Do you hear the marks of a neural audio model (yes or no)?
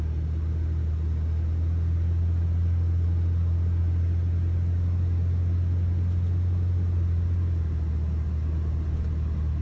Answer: no